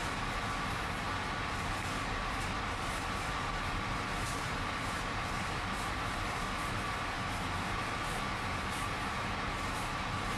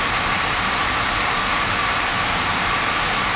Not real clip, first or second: second